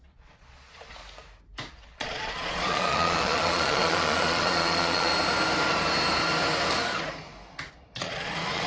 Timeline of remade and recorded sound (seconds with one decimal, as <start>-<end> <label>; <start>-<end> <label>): 0.0-1.0 remade; 1.0-1.7 recorded; 1.7-5.1 remade; 5.1-7.7 recorded; 7.7-8.7 remade